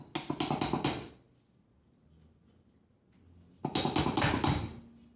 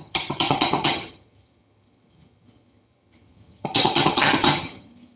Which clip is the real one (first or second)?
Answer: first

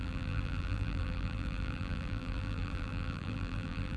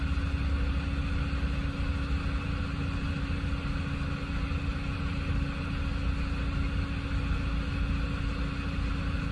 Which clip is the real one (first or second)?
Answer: second